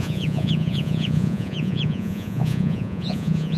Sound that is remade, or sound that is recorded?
remade